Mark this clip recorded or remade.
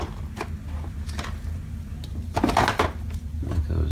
recorded